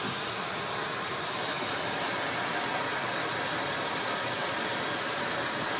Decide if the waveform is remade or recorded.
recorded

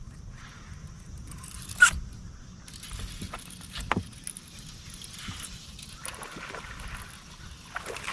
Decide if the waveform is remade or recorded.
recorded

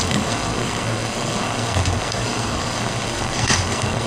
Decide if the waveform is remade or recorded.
remade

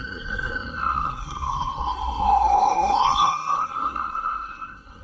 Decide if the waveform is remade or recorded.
remade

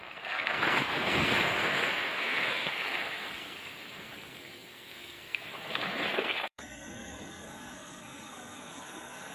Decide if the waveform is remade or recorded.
remade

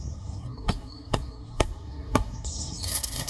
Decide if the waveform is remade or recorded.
remade